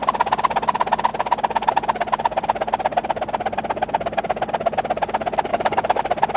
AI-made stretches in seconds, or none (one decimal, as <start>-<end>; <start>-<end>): 5.5-6.0